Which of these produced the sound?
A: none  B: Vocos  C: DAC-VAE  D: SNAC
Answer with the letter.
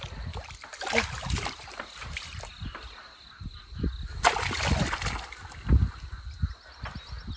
A